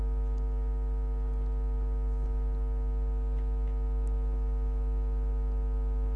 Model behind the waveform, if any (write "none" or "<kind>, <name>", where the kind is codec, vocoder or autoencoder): none